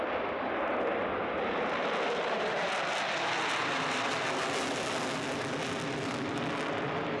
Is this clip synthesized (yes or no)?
no